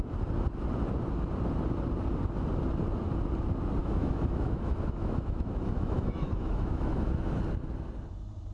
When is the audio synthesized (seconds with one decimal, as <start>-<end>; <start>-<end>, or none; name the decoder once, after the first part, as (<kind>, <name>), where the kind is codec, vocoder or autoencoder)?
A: 3.8-7.4 (autoencoder, DAC-VAE)